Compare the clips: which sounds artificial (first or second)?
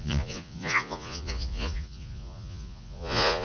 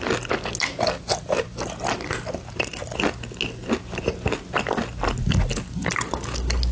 first